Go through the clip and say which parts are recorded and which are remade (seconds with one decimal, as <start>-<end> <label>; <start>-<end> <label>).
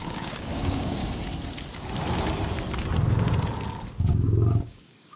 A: 0.0-1.0 remade; 1.0-4.1 recorded; 4.1-5.2 remade